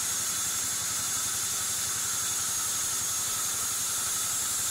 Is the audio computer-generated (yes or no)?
no